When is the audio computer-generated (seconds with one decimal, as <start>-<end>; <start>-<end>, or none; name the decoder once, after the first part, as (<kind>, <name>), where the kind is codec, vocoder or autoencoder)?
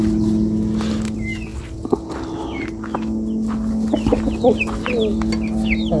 none